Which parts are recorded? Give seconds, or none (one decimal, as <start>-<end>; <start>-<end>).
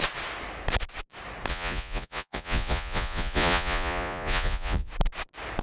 0.0-1.5; 4.9-5.6